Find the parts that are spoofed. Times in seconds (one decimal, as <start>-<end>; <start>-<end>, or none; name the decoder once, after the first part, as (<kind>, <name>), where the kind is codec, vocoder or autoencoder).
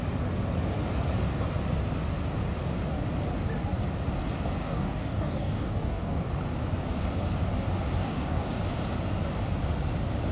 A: 4.6-6.3 (codec, DAC); 8.0-8.6